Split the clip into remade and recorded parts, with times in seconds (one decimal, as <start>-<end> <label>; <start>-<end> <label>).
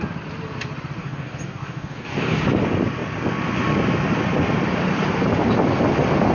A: 0.0-1.0 recorded; 1.0-2.4 remade; 2.4-6.3 recorded